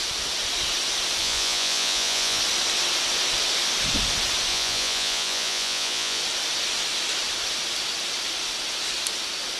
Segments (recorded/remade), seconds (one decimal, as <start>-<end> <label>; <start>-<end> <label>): 0.0-1.2 recorded; 1.2-2.4 remade; 2.4-4.5 recorded; 4.5-6.2 remade; 6.2-9.6 recorded